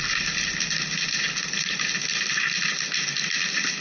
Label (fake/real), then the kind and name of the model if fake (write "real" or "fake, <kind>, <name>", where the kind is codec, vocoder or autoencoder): real